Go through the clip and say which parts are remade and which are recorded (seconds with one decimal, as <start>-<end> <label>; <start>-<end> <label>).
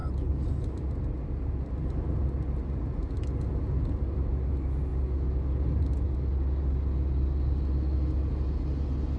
0.0-9.2 recorded